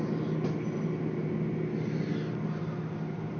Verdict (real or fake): real